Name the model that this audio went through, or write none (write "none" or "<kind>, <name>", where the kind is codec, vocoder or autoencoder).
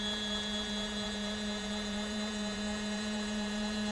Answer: vocoder, BigVGAN v2